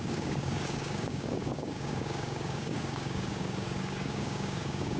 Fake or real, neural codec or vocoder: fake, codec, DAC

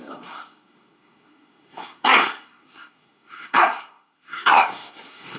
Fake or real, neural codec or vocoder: fake, codec, SNAC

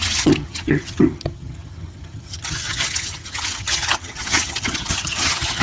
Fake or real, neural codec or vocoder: fake, vocoder, HiFi-GAN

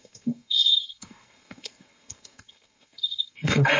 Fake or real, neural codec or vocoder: fake, codec, SNAC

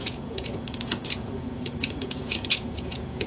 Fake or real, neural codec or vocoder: fake, vocoder, Vocos